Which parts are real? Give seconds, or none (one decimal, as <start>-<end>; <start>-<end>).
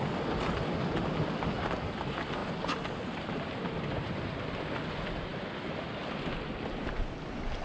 0.0-7.6